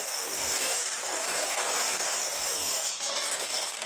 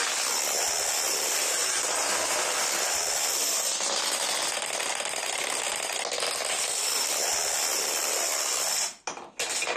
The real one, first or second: second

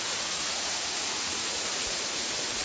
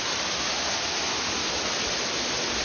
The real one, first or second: second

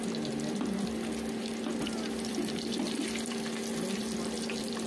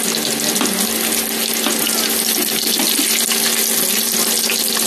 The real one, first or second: second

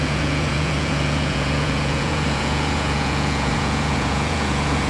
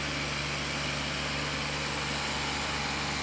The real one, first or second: second